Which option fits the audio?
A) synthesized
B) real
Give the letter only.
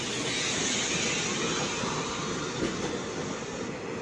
B